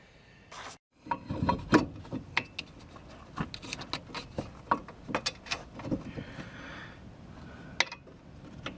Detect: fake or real real